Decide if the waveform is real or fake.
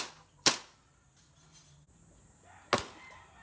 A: real